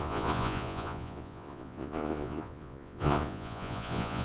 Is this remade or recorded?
remade